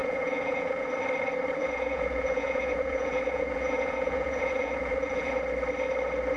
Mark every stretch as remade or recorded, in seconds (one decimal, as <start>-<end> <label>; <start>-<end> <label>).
0.0-0.9 remade; 0.9-1.6 recorded; 1.6-5.4 remade; 5.4-6.4 recorded